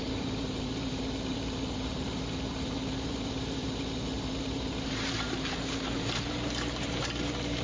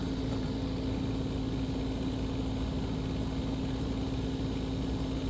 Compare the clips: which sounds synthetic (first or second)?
first